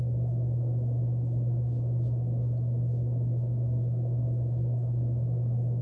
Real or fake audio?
fake